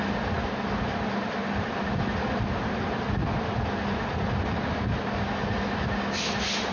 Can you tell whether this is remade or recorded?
recorded